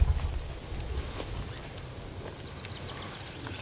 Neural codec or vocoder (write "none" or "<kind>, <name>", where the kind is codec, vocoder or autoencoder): none